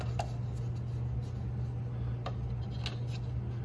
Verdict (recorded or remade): recorded